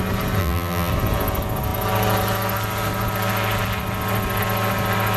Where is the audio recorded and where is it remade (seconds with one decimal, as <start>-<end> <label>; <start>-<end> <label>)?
0.0-0.4 recorded; 0.4-0.9 remade; 0.9-5.2 recorded